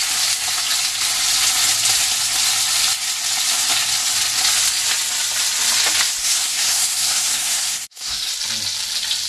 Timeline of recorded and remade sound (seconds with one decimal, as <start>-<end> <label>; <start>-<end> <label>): 0.0-6.2 recorded; 6.2-8.3 remade; 8.3-9.3 recorded